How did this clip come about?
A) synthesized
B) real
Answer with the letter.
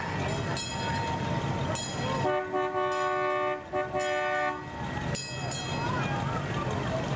B